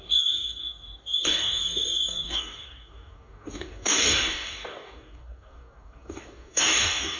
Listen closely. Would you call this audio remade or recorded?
remade